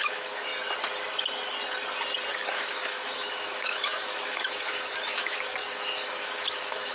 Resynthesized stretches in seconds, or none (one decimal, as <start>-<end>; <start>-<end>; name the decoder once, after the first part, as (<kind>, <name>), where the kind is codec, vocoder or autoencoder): 0.0-0.5 (autoencoder, DAC-VAE); 2.3-6.9